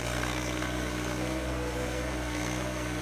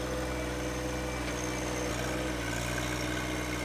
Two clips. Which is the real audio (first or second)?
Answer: second